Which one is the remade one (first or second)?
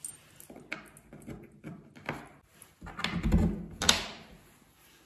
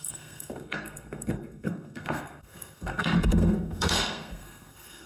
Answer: second